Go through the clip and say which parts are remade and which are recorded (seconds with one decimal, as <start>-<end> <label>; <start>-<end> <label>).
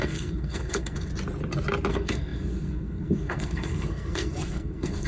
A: 0.0-1.1 remade; 1.1-1.9 recorded; 1.9-5.1 remade